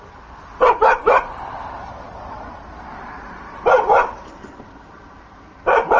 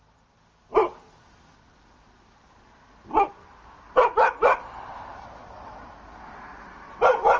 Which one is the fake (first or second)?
first